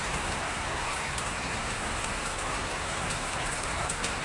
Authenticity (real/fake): fake